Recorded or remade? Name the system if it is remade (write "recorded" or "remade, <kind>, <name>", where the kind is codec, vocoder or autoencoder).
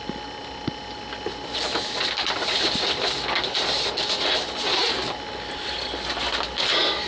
recorded